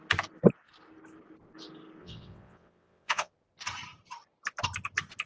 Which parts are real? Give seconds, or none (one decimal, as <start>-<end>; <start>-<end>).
0.0-2.0; 3.3-5.3

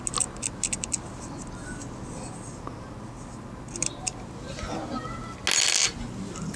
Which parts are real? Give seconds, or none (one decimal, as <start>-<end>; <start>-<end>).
0.0-6.6